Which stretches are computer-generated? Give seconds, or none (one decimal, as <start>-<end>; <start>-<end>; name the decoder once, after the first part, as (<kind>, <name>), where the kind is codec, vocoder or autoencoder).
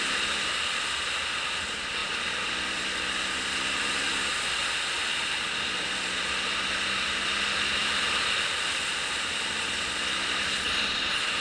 2.0-3.0 (vocoder, BigVGAN v2)